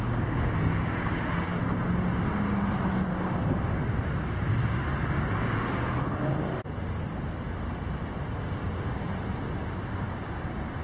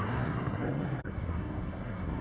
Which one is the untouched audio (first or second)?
first